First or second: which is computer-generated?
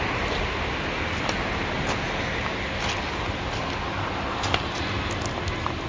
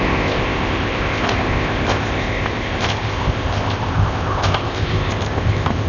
second